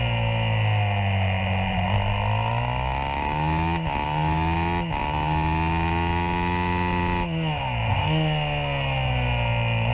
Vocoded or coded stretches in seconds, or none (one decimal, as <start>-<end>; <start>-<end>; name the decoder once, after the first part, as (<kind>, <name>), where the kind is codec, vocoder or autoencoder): none